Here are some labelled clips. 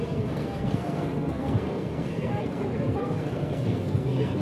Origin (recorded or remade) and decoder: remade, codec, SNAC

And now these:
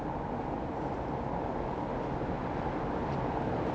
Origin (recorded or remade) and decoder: recorded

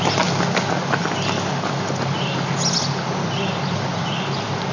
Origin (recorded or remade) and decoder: recorded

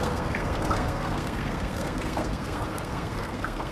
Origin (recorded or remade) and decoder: remade, codec, SNAC